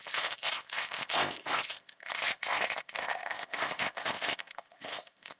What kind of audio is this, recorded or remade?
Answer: remade